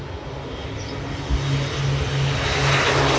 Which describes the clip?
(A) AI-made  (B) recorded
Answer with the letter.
B